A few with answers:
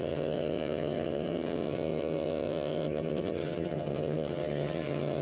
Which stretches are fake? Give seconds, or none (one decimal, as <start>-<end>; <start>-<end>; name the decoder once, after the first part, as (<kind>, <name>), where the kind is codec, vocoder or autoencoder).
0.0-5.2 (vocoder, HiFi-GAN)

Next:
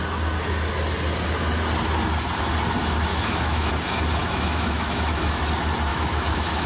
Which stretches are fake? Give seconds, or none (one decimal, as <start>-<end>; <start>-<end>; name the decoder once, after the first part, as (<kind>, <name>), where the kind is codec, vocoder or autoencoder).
3.1-3.7 (autoencoder, DAC-VAE); 4.2-5.4; 5.9-6.7

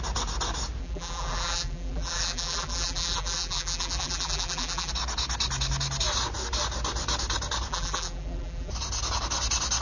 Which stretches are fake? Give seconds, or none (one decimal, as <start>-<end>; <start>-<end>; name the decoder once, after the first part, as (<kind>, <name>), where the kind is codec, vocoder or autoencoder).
0.8-4.9 (vocoder, BigVGAN v2); 7.7-8.7